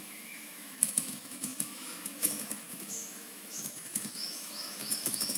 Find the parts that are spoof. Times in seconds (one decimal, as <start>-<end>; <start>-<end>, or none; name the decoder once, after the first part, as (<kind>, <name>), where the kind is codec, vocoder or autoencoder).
0.0-5.4 (autoencoder, DAC-VAE)